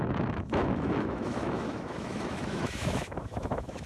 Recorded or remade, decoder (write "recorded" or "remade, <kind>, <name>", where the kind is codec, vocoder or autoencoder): remade, autoencoder, DAC-VAE